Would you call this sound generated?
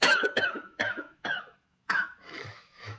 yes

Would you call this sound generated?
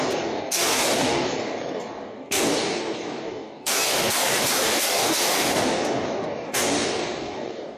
yes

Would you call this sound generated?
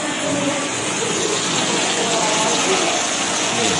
yes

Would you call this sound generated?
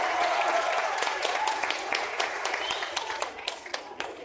yes